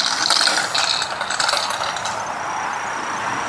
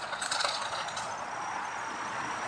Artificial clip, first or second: second